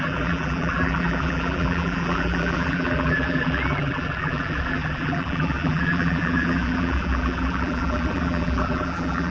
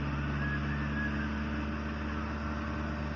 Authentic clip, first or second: second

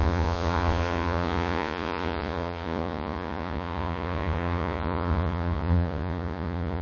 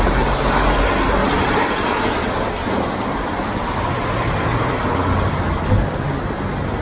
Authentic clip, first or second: second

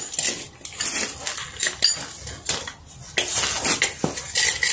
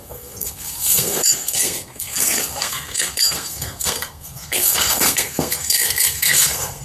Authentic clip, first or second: first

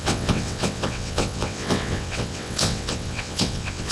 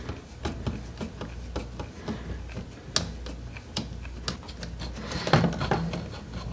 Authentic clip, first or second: second